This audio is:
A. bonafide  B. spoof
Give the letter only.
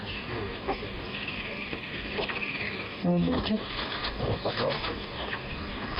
B